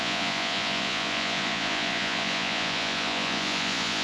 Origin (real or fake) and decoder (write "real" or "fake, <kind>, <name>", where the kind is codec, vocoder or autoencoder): fake, vocoder, Vocos